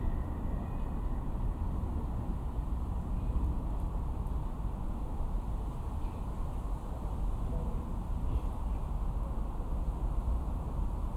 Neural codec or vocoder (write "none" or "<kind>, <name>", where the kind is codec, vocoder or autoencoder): none